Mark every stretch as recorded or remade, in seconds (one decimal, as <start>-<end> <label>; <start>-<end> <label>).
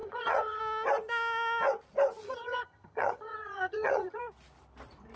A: 0.0-0.6 remade; 0.6-2.2 recorded; 2.2-4.2 remade; 4.2-5.2 recorded